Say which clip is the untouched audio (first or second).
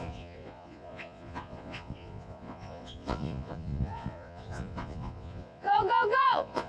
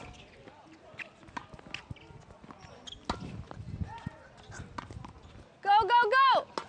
second